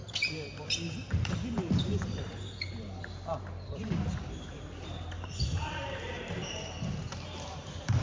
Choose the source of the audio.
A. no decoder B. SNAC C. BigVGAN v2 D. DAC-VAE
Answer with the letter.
C